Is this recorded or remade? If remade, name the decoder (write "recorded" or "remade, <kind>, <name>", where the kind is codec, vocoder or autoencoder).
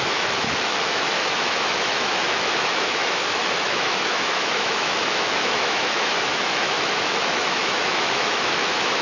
remade, autoencoder, DAC-VAE